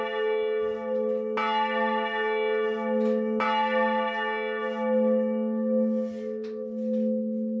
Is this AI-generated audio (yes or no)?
no